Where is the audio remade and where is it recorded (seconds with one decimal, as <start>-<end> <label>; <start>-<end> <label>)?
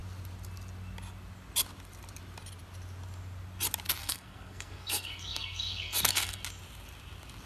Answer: 0.0-4.0 recorded; 4.0-6.4 remade; 6.4-7.5 recorded